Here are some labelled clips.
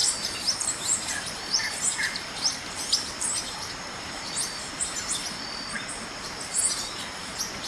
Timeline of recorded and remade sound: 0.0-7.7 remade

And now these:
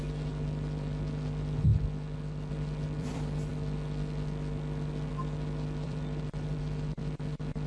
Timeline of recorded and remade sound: 0.0-1.7 remade; 1.7-2.5 recorded; 2.5-3.5 remade; 3.5-5.1 recorded; 5.1-7.0 remade; 7.0-7.7 recorded